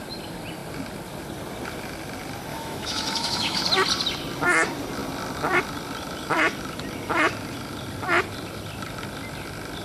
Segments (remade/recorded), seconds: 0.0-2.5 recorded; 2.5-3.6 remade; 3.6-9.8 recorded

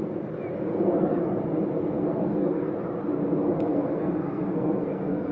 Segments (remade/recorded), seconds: 0.0-0.7 recorded; 0.7-1.4 remade; 1.4-1.8 recorded; 1.8-2.7 remade; 2.7-3.7 recorded; 3.7-5.3 remade